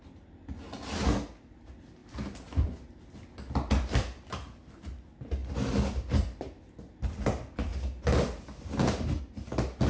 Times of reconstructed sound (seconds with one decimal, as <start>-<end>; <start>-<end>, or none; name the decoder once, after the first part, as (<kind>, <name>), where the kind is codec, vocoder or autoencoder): none